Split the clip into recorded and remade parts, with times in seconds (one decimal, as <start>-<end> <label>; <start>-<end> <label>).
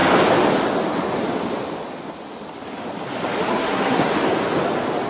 0.0-3.5 recorded; 3.5-4.1 remade; 4.1-5.1 recorded